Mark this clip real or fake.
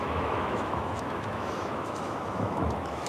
fake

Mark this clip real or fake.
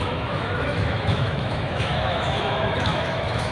fake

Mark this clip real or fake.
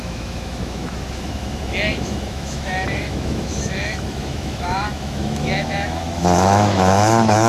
fake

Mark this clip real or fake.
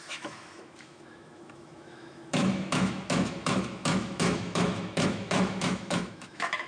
fake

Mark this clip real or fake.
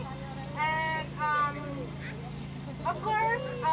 real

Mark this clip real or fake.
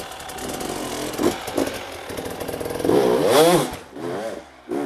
real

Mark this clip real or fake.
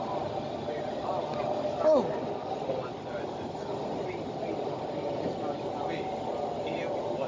real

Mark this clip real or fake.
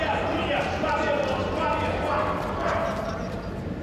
real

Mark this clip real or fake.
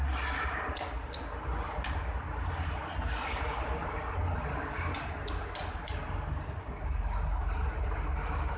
real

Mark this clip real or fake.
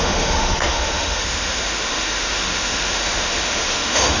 fake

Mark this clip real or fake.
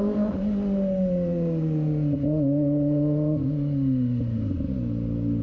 real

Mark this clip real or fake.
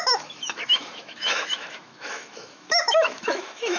fake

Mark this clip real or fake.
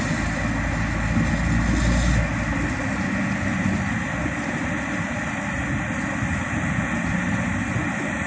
real